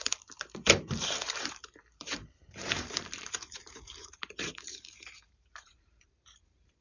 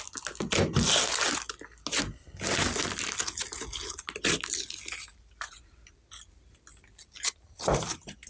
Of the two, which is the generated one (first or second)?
first